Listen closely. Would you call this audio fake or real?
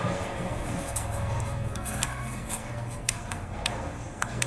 fake